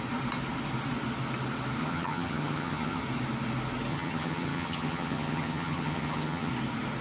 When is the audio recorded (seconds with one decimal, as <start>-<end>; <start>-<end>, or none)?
0.0-1.8; 3.0-3.9; 6.5-7.0